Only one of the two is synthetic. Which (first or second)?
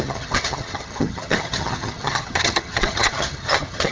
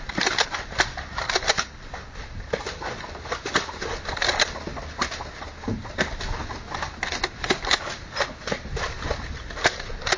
first